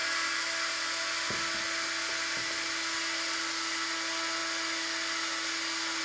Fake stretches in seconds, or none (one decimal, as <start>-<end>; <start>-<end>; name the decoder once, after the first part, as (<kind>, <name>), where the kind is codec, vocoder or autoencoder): none